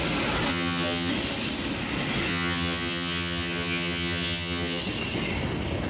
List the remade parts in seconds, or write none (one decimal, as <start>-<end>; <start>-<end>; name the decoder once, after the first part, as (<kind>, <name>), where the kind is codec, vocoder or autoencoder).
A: 0.5-1.1 (vocoder, HiFi-GAN); 2.3-4.8